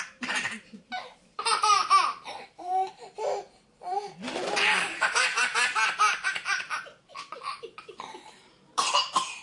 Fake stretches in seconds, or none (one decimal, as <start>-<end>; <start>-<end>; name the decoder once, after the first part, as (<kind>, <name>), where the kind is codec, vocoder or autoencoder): 0.0-9.4 (vocoder, BigVGAN v2)